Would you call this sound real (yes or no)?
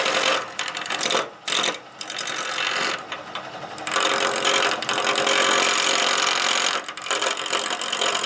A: yes